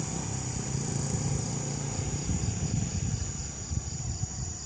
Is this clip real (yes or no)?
yes